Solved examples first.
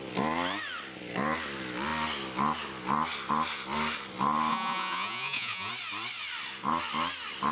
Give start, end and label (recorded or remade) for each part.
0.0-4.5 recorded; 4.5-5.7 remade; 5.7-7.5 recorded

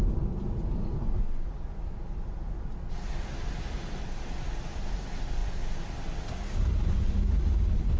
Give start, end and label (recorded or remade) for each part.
0.0-8.0 recorded

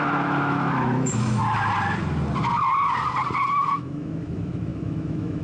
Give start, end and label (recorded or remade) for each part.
0.0-1.4 remade; 1.4-3.5 recorded; 3.5-5.4 remade

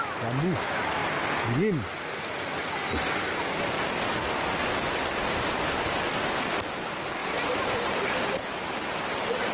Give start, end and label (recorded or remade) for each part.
0.0-7.2 recorded; 7.2-8.8 remade; 8.8-9.5 recorded

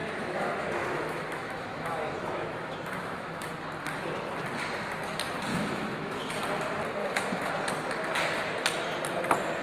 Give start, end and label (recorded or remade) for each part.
0.0-3.5 remade; 3.5-5.5 recorded; 5.5-6.3 remade; 6.3-7.0 recorded; 7.0-7.5 remade; 7.5-9.6 recorded

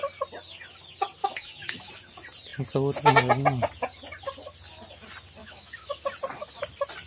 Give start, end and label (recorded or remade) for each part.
0.0-1.2 recorded; 1.2-1.9 remade; 1.9-5.4 recorded; 5.4-6.0 remade; 6.0-7.1 recorded